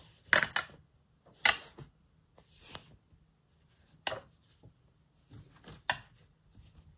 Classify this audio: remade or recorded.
recorded